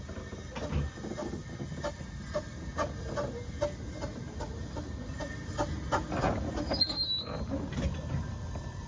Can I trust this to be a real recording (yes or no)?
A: yes